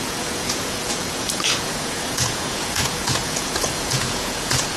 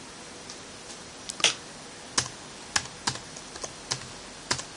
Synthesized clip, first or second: first